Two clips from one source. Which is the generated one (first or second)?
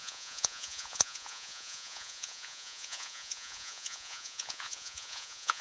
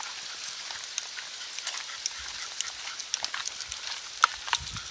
first